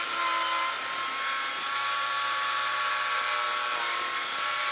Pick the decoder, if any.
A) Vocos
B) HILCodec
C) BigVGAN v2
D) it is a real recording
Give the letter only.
D